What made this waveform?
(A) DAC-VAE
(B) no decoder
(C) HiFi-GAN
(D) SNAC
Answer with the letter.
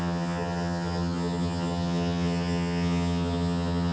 C